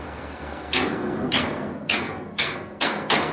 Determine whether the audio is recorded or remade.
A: remade